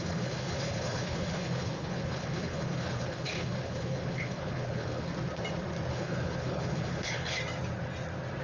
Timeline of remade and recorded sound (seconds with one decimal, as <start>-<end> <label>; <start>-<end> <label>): 0.0-5.1 remade; 5.1-5.9 recorded; 5.9-7.4 remade; 7.4-8.4 recorded